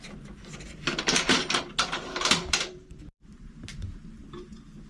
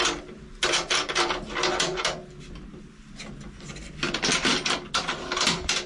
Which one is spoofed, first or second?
first